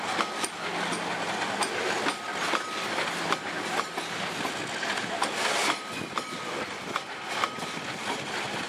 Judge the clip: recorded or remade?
recorded